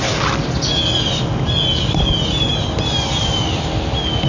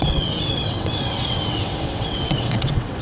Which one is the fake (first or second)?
second